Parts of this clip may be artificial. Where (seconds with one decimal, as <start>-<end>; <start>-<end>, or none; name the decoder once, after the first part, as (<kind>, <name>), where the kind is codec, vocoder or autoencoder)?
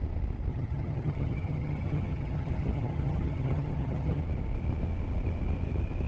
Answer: 0.5-4.2 (vocoder, HiFi-GAN)